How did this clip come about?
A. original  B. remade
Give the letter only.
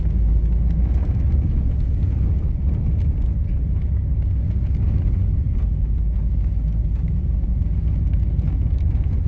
A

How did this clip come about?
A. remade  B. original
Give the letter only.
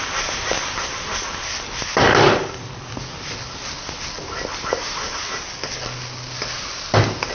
B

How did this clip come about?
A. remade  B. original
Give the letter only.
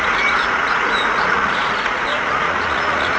A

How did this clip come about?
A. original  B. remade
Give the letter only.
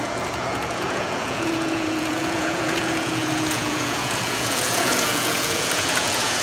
B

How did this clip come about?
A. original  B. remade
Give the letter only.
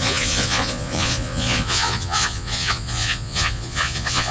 B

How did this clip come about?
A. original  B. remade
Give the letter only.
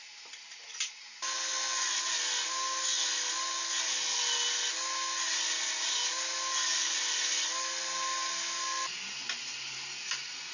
A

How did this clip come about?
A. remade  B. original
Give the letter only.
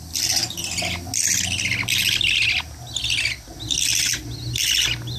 B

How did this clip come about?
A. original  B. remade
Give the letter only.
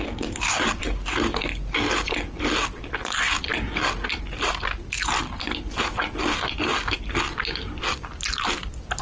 A